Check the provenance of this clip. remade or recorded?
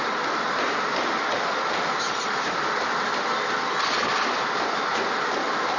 recorded